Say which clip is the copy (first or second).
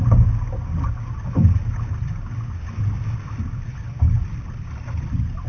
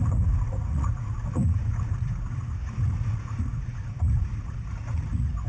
second